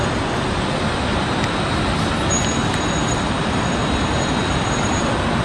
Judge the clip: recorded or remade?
remade